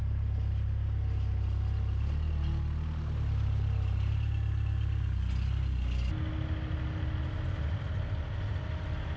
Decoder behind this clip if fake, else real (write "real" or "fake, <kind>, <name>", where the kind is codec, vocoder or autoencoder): real